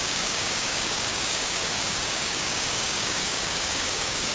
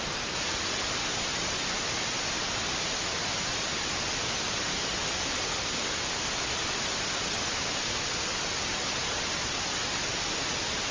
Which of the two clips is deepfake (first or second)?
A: first